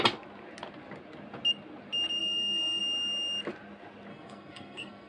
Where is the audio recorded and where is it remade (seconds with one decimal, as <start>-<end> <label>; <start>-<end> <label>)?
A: 0.0-2.2 recorded; 2.2-2.8 remade; 2.8-4.1 recorded; 4.1-5.1 remade